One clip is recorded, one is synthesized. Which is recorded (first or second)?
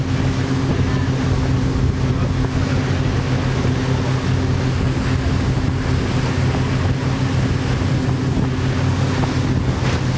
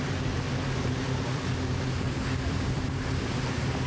first